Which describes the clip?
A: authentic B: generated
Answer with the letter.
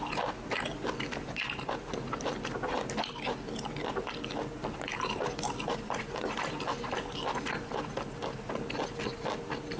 A